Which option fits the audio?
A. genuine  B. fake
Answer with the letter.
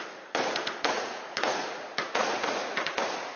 B